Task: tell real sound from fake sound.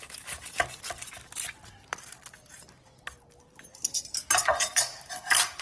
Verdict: real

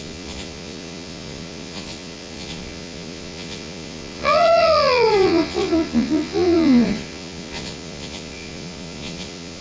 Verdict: fake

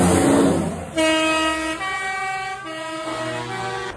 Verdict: real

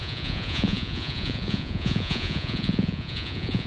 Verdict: fake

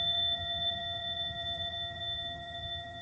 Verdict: fake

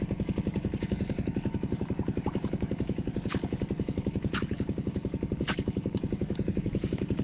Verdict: fake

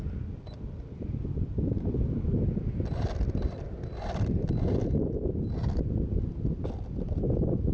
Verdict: real